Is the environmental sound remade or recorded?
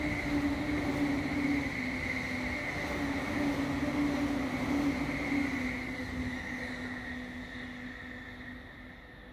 recorded